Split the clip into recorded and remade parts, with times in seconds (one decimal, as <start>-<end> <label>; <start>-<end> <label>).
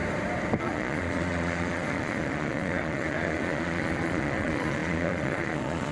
0.0-0.6 recorded; 0.6-5.9 remade